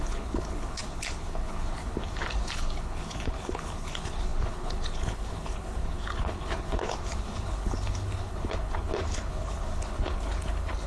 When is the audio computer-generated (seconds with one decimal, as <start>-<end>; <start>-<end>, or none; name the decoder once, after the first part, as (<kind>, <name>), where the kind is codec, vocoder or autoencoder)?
0.0-10.9 (codec, HILCodec)